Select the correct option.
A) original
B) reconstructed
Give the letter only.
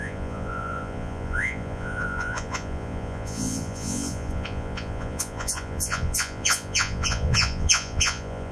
B